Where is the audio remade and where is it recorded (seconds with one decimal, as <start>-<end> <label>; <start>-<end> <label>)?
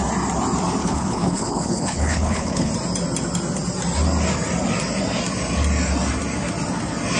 0.0-0.8 recorded; 0.8-2.7 remade; 2.7-7.2 recorded